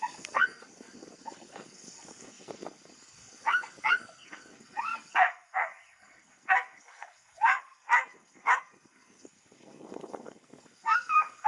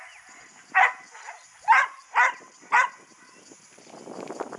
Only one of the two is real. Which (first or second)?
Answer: second